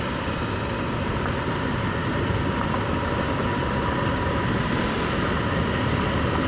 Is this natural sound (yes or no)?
yes